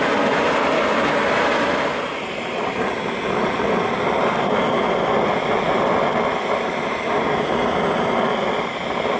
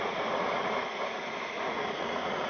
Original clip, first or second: first